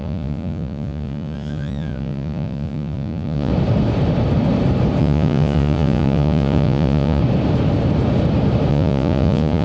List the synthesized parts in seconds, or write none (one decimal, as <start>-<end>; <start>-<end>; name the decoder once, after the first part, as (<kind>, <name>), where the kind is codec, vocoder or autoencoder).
0.0-3.5 (vocoder, Vocos); 5.0-7.2; 8.7-9.6